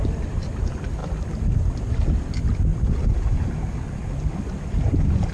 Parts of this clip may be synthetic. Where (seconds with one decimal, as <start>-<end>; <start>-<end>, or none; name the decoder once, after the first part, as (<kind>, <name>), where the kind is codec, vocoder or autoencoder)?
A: none